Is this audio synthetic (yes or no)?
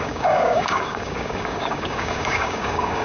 yes